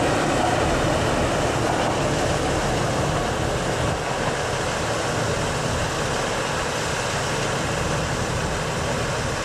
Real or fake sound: real